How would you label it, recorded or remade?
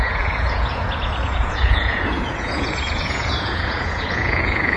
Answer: remade